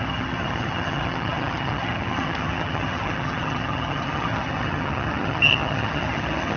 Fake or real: fake